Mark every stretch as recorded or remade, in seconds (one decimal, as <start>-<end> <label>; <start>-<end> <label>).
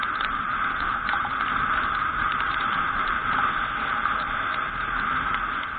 0.0-3.2 remade; 3.2-3.9 recorded; 3.9-5.8 remade